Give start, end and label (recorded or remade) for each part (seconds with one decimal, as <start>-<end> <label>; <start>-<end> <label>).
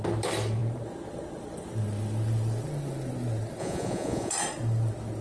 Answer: 0.0-3.6 recorded; 3.6-4.3 remade; 4.3-5.2 recorded